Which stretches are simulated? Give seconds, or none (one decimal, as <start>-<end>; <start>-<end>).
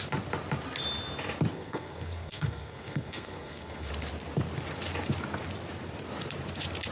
1.5-3.9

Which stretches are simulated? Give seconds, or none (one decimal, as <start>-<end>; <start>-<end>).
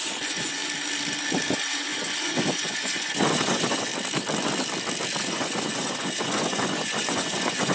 0.0-0.6; 1.5-3.9; 5.2-7.7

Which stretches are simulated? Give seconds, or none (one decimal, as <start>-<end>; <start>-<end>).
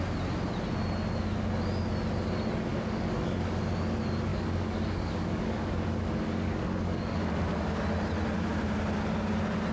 2.7-3.6; 4.3-7.8